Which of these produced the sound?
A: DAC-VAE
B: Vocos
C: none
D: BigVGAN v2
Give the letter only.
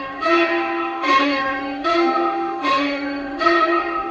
A